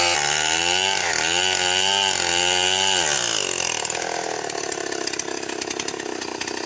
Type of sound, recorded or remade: recorded